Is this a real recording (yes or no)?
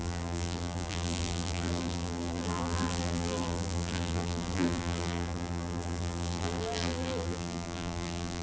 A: no